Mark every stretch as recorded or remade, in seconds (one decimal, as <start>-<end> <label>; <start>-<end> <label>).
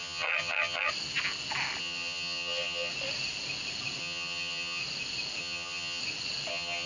0.0-0.9 remade; 0.9-1.8 recorded; 1.8-2.9 remade; 2.9-4.0 recorded; 4.0-4.8 remade; 4.8-5.4 recorded; 5.4-6.0 remade; 6.0-6.5 recorded; 6.5-6.9 remade